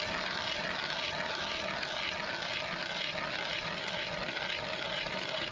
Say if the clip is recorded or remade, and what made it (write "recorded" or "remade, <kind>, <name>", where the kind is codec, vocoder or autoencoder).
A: recorded